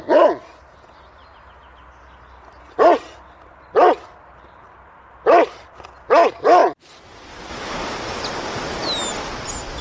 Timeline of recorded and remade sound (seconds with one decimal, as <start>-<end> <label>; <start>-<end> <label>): 0.0-9.8 recorded